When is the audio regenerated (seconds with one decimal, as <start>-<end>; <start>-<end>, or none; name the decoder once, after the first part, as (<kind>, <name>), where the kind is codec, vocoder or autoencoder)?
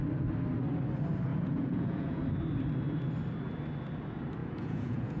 1.3-2.2 (vocoder, Vocos); 4.4-5.2